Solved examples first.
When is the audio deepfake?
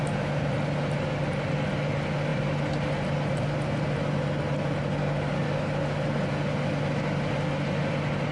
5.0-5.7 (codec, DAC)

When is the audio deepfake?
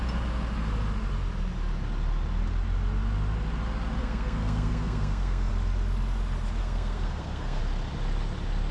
4.0-5.5 (codec, SNAC); 6.6-7.6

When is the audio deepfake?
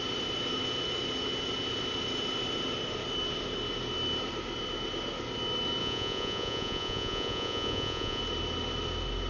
5.8-8.2 (vocoder, Vocos)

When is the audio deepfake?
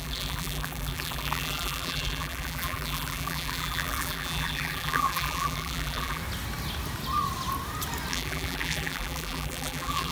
0.0-6.2 (vocoder, BigVGAN v2); 8.1-10.1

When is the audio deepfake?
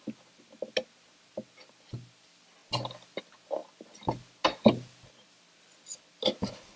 none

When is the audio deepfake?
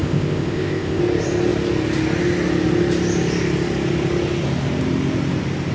0.0-1.0 (codec, ZipCodec)